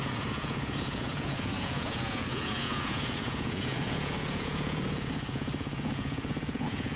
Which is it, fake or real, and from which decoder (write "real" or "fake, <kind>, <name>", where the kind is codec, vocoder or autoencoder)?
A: fake, vocoder, Vocos